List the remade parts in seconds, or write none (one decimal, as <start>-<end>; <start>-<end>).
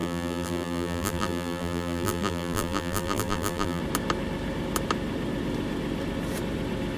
0.0-3.8